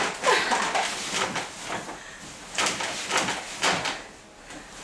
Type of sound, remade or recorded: recorded